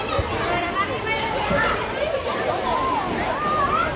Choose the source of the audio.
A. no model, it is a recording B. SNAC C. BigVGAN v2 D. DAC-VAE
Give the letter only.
A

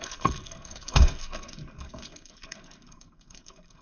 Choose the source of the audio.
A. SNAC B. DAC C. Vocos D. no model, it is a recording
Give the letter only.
A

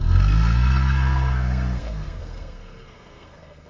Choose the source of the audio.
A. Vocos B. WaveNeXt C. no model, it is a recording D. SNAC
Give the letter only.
D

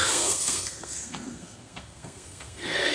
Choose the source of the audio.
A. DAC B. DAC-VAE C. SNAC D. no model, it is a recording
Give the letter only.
C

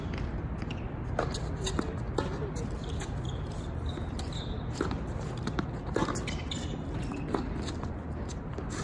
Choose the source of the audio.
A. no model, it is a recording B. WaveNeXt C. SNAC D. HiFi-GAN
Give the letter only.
A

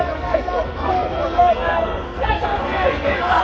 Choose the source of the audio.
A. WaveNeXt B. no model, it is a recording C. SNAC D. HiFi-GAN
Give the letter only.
C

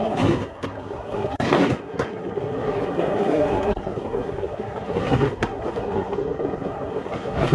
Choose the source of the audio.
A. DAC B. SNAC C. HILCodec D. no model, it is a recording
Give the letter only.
B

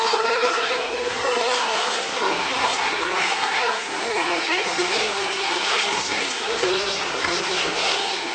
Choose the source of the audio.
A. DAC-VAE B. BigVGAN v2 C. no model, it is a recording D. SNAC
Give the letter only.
D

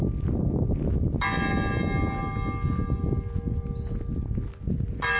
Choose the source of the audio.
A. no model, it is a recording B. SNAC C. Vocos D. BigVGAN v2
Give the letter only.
A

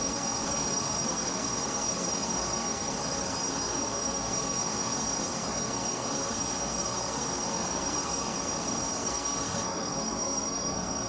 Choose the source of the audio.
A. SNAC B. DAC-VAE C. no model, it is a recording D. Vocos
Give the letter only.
A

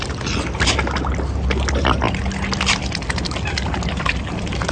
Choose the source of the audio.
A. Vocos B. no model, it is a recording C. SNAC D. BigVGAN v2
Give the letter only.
B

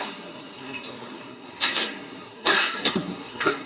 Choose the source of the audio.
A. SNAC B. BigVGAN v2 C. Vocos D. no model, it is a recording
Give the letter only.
A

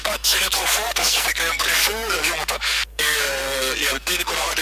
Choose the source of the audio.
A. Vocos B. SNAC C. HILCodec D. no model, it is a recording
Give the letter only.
B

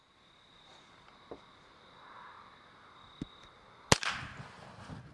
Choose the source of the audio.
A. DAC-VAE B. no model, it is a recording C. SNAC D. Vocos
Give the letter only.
B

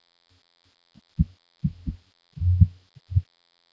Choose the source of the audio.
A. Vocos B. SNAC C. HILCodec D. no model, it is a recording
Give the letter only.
D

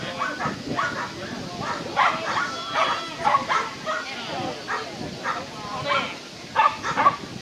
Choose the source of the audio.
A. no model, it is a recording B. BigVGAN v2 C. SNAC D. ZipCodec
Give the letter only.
A